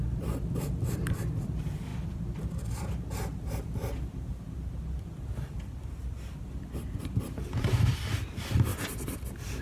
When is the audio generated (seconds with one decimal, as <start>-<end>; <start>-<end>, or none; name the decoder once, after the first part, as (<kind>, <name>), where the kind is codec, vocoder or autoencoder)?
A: 0.0-1.9 (vocoder, BigVGAN v2); 7.0-8.7